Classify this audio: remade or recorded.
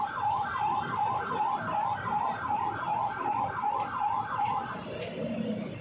remade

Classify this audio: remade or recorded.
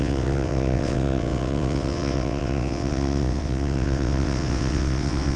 remade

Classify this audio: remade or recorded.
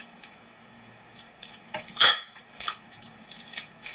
remade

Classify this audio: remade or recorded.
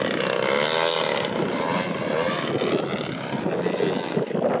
recorded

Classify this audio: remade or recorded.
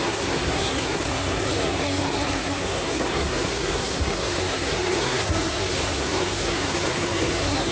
remade